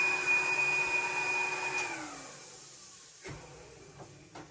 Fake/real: real